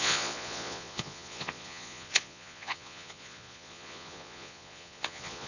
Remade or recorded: remade